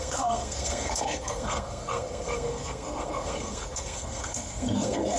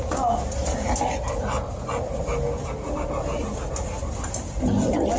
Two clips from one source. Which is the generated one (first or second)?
first